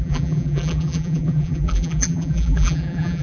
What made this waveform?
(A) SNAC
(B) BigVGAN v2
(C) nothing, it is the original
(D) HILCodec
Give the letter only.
B